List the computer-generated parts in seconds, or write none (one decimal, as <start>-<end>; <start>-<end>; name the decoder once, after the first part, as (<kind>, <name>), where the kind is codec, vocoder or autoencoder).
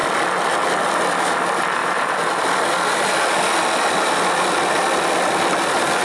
1.8-2.4 (vocoder, BigVGAN v2)